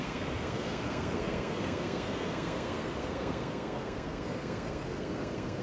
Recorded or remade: remade